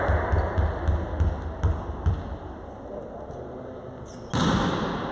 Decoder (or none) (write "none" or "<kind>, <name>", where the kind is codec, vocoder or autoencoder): none